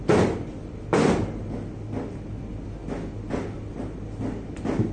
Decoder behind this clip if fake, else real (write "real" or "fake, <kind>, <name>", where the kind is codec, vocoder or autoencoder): real